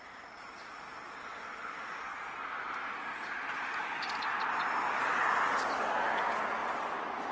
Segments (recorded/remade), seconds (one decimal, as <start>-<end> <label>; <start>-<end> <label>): 0.0-3.1 recorded; 3.1-5.4 remade; 5.4-6.6 recorded; 6.6-7.3 remade